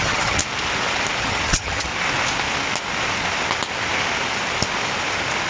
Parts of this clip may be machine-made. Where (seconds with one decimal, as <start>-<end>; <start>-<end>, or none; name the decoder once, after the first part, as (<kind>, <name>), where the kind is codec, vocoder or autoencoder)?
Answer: 0.0-0.4 (vocoder, HiFi-GAN); 1.2-1.9

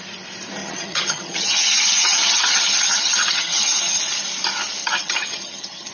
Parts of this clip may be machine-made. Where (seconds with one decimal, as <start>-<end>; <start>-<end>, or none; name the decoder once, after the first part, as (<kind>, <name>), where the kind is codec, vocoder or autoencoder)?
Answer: 0.6-4.0 (vocoder, HiFi-GAN); 4.8-5.9

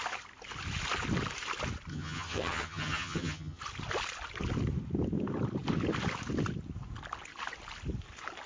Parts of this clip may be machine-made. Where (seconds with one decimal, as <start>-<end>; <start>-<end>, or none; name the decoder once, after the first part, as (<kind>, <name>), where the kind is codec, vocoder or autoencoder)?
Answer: 1.9-3.6 (vocoder, HiFi-GAN)

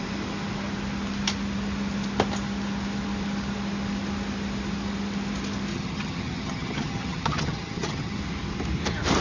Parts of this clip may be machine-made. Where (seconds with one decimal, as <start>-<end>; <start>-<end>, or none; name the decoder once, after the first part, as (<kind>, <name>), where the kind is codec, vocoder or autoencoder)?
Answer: 5.7-8.2 (vocoder, HiFi-GAN)

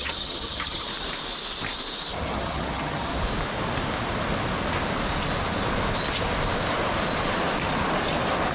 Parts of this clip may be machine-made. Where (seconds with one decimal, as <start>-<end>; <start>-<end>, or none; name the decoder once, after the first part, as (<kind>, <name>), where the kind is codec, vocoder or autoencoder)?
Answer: 0.0-0.9 (vocoder, HiFi-GAN); 2.1-3.1

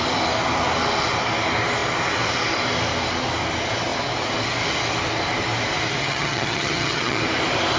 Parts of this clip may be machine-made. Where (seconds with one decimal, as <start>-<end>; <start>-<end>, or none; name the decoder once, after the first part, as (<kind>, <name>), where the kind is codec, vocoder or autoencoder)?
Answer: 6.0-7.2 (vocoder, HiFi-GAN)